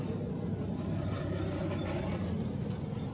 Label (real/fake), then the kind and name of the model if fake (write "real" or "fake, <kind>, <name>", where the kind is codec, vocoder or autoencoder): real